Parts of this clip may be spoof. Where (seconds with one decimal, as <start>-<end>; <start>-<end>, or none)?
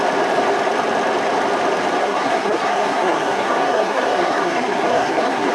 2.0-5.5